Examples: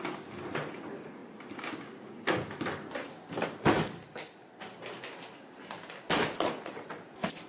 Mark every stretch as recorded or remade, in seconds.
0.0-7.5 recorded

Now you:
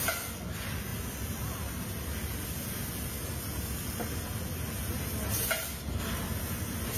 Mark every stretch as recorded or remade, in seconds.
0.0-7.0 recorded

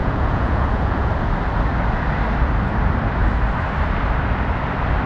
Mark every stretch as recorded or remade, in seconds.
0.0-1.1 remade; 1.1-5.1 recorded

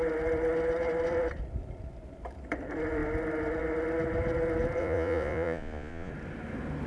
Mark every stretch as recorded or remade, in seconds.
0.0-4.8 recorded; 4.8-6.1 remade; 6.1-6.9 recorded

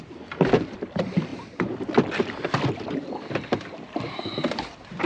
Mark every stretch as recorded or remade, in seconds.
0.0-5.1 recorded